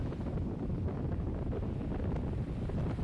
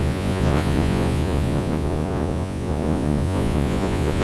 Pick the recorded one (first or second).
first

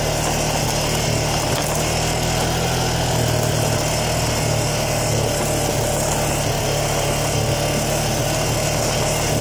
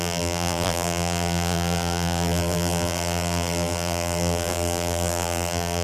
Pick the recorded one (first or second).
first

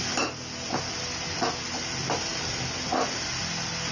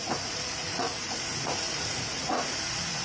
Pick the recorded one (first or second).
first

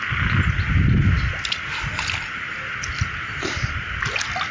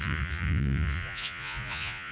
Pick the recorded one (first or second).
first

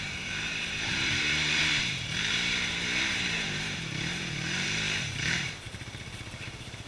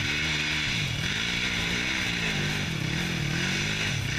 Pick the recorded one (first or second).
second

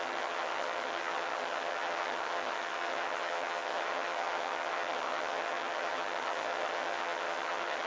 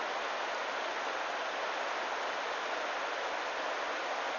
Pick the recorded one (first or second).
second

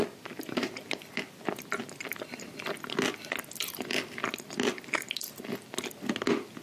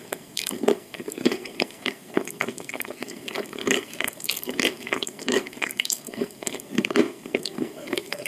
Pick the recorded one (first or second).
first